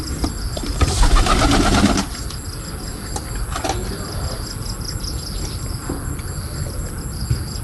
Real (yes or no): yes